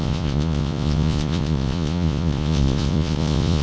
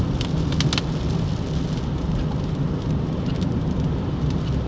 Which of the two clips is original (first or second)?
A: second